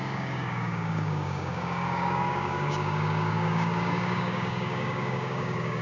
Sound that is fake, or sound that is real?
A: fake